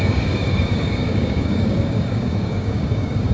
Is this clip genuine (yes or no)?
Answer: no